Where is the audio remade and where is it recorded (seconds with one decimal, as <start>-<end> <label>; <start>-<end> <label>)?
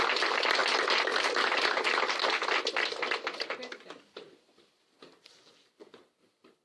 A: 0.0-6.6 recorded